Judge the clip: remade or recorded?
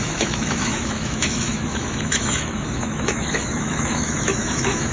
remade